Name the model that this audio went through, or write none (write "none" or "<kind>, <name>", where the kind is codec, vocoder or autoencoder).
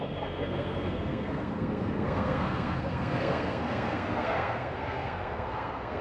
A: codec, SNAC